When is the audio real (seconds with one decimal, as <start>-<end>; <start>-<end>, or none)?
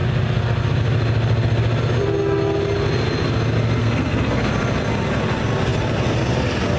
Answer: 0.0-3.8; 4.5-6.8